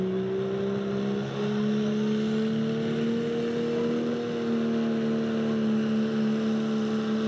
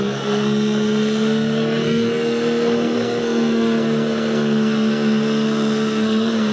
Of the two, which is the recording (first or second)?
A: first